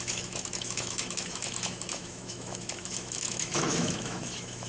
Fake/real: fake